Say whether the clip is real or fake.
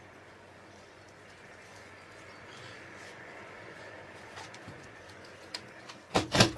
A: fake